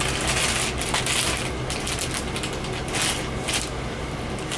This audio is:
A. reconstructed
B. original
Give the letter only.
B